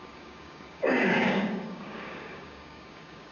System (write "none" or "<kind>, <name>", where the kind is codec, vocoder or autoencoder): codec, DAC